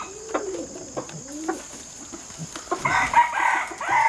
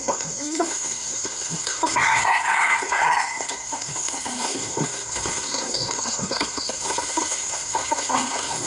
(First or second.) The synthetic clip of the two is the second